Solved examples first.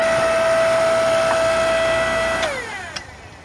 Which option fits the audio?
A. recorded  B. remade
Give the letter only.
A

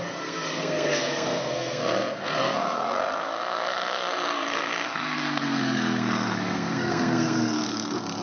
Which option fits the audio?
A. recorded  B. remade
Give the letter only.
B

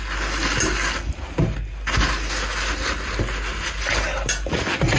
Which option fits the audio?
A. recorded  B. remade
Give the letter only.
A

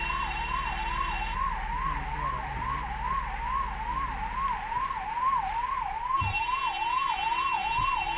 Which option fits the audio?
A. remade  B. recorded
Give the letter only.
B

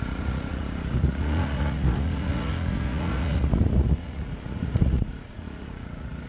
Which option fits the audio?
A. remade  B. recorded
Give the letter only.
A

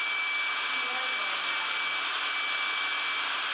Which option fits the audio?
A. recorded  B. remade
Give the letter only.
A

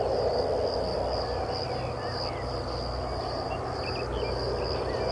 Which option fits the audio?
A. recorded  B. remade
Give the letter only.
A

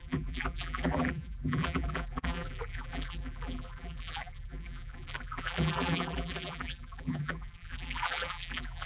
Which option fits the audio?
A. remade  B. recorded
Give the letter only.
A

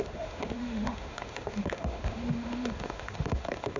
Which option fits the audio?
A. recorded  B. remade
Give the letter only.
B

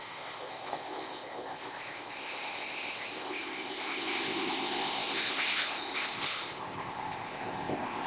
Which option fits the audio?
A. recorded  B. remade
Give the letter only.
B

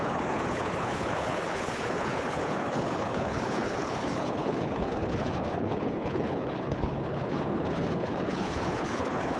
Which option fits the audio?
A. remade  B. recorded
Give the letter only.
A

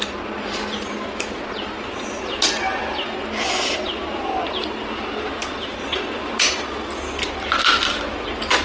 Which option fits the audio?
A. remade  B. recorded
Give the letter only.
B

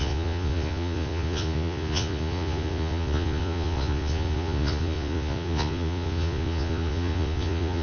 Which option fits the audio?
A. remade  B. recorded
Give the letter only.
A